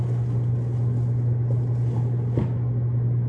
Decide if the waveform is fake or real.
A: real